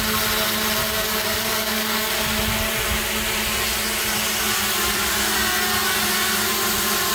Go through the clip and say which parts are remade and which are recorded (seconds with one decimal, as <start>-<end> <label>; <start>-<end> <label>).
0.0-0.8 recorded; 0.8-2.4 remade; 2.4-7.1 recorded